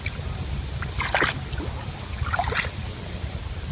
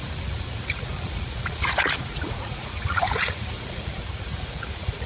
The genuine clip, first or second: first